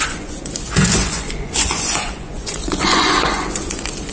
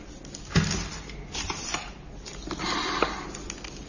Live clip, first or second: second